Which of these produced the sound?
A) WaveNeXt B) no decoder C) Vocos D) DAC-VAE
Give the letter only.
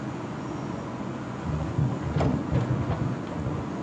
C